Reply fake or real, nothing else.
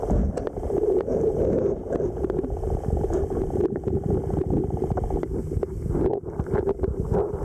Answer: real